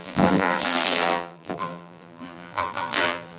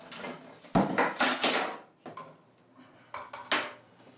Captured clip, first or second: second